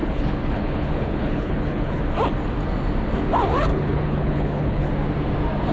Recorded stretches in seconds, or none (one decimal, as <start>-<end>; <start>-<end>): 2.0-3.7; 4.9-5.7